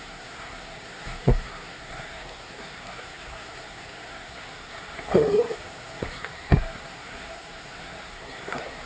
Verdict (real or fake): fake